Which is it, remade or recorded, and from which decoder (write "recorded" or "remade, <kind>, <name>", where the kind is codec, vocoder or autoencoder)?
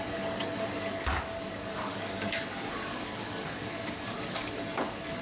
remade, codec, DAC